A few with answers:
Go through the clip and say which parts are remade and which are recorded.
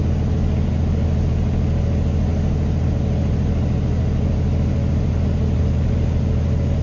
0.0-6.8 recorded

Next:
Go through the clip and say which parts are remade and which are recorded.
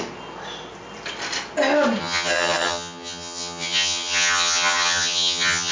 0.0-2.0 recorded; 2.0-5.7 remade